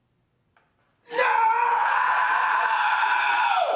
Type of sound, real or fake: real